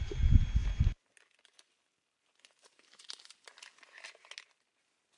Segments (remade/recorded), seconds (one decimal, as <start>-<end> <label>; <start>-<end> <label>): 0.0-5.2 recorded